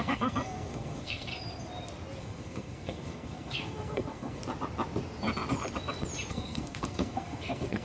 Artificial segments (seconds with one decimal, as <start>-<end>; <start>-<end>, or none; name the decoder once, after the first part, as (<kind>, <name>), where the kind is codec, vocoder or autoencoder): 0.0-1.3 (codec, SNAC); 2.2-4.4; 6.3-7.8